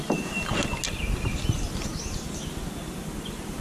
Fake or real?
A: real